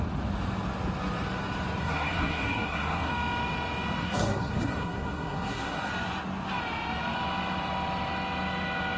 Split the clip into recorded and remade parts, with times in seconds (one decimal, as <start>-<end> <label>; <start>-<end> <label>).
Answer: 0.0-1.8 recorded; 1.8-3.1 remade; 3.1-4.0 recorded; 4.0-5.9 remade; 5.9-9.0 recorded